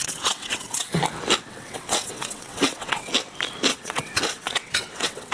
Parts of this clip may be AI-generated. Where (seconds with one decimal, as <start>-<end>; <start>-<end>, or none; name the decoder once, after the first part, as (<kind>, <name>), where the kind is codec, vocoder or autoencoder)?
0.0-1.0 (vocoder, WaveNeXt); 1.5-3.1; 3.7-5.3